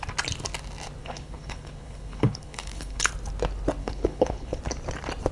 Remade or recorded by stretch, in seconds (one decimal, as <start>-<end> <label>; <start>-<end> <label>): 0.0-1.0 recorded; 1.0-3.1 remade; 3.1-3.8 recorded; 3.8-4.6 remade; 4.6-5.3 recorded